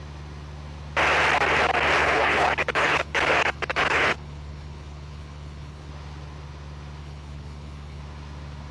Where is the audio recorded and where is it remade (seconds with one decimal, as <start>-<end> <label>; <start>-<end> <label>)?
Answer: 0.0-2.0 recorded; 2.0-5.9 remade; 5.9-7.0 recorded; 7.0-8.0 remade; 8.0-8.7 recorded